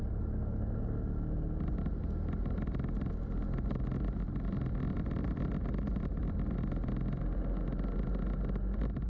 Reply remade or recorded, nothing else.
recorded